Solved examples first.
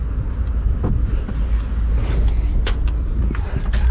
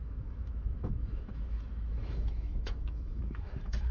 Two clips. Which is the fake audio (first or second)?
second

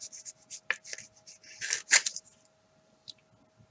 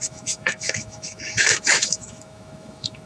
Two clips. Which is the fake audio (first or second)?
second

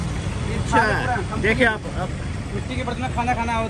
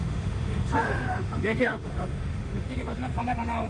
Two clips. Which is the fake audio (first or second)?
second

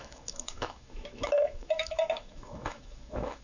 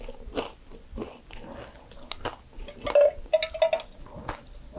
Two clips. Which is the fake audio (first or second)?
first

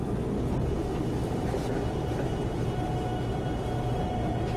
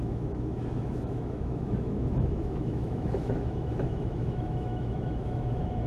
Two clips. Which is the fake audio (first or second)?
second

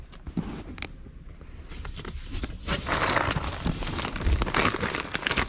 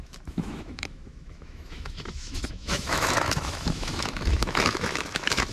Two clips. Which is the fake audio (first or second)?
second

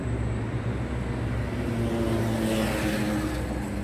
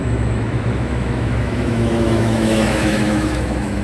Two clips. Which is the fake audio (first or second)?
second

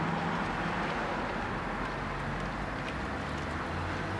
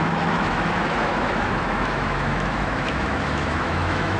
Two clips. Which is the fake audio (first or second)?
second